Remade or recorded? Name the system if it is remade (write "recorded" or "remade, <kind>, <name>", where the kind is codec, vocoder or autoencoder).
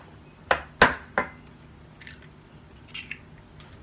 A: recorded